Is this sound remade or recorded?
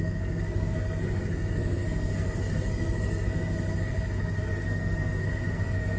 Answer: remade